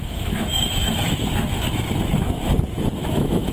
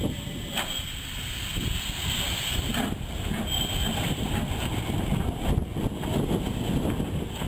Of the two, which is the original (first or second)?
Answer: second